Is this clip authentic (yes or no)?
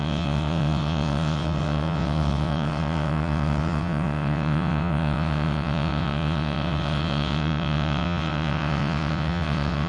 no